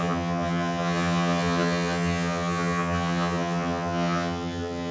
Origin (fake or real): fake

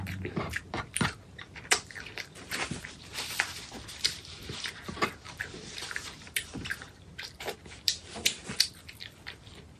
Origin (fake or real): fake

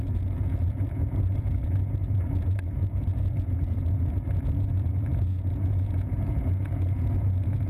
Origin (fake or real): fake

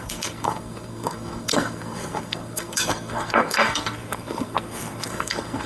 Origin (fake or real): fake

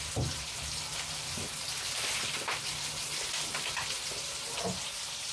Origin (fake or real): real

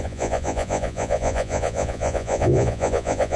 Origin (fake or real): fake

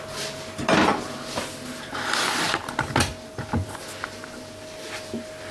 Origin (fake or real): real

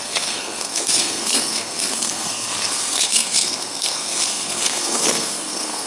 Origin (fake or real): fake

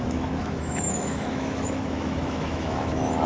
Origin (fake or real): fake